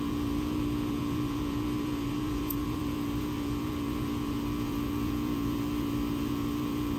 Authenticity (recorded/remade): remade